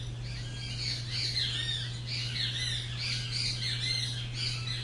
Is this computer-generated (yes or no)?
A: no